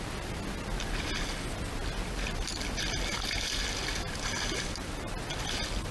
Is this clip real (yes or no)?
yes